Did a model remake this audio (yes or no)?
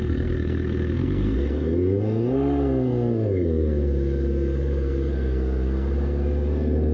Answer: yes